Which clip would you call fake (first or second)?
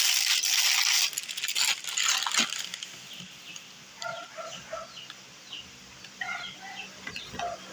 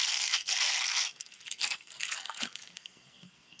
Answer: second